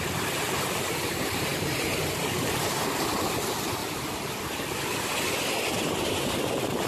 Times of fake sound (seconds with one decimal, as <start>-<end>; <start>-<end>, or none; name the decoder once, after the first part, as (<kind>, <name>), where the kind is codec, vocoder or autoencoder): 0.0-3.8 (vocoder, BigVGAN v2); 5.5-6.9